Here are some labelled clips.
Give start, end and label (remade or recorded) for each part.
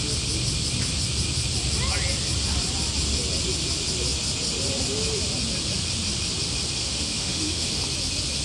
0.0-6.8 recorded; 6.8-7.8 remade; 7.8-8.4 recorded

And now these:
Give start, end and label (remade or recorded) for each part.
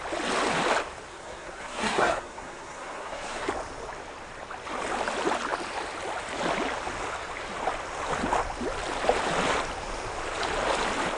0.0-1.1 recorded; 1.1-3.5 remade; 3.5-11.2 recorded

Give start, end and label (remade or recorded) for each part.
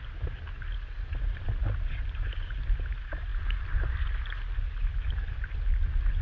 0.0-6.2 recorded